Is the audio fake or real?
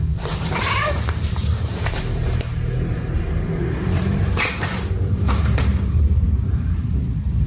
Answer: fake